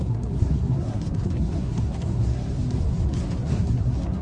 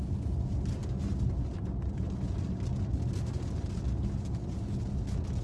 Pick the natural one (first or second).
second